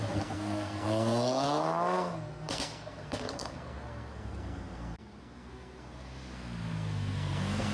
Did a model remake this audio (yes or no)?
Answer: yes